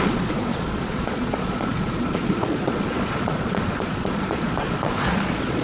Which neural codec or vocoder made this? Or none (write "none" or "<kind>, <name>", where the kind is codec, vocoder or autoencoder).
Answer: vocoder, Vocos